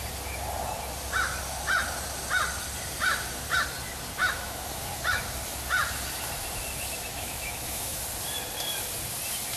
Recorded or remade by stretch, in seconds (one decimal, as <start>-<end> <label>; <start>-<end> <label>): 0.0-4.2 recorded; 4.2-4.8 remade; 4.8-7.1 recorded; 7.1-8.0 remade; 8.0-9.6 recorded